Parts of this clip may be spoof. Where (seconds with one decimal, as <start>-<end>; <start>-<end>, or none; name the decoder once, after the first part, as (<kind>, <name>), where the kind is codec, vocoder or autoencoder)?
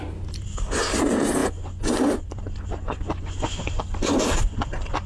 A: none